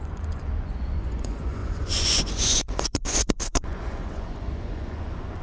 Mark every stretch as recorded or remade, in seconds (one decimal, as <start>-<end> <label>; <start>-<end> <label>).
0.0-5.4 remade

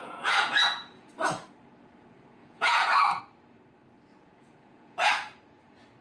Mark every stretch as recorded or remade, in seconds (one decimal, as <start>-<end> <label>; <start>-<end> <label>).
0.0-1.1 remade; 1.1-2.4 recorded; 2.4-3.2 remade; 3.2-4.1 recorded; 4.1-5.1 remade; 5.1-6.0 recorded

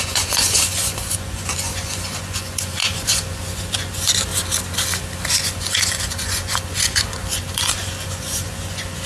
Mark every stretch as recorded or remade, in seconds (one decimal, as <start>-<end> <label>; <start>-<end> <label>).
0.0-4.3 remade; 4.3-5.3 recorded; 5.3-9.1 remade